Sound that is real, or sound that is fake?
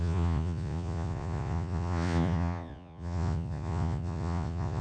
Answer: fake